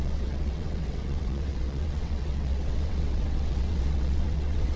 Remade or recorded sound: remade